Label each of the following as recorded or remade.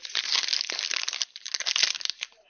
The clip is recorded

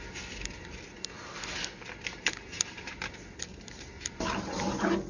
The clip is recorded